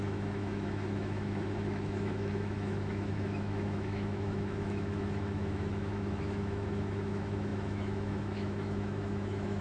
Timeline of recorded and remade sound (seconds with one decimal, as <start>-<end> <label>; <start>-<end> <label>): 0.0-9.6 remade